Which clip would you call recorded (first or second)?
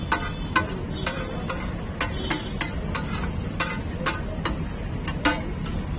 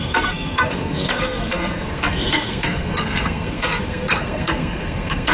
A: first